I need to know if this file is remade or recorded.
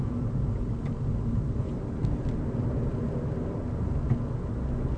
recorded